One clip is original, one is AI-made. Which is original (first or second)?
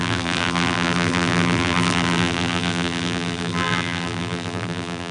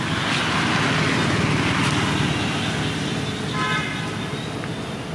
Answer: second